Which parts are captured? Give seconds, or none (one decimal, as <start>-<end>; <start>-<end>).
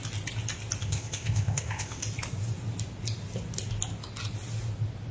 0.0-0.8; 2.0-5.1